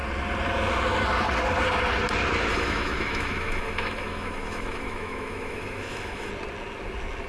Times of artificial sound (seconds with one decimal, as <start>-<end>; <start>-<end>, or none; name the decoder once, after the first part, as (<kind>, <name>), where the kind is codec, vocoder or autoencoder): 2.5-6.3 (autoencoder, DAC-VAE)